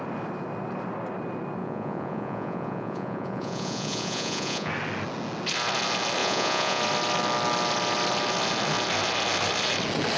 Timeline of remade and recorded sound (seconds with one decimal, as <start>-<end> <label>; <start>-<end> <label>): 0.0-1.6 recorded; 1.6-4.7 remade; 4.7-6.2 recorded; 6.2-6.8 remade; 6.8-10.2 recorded